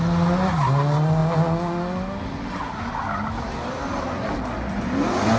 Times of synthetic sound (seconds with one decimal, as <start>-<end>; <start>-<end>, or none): none